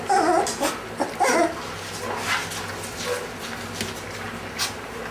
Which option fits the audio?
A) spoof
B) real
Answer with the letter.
B